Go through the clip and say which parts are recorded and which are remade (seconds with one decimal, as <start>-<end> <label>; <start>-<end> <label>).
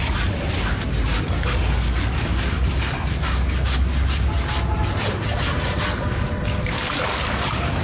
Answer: 0.0-1.1 recorded; 1.1-2.7 remade; 2.7-7.1 recorded; 7.1-7.8 remade